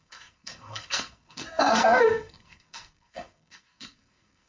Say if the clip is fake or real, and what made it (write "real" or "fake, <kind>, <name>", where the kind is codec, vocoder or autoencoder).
fake, codec, SNAC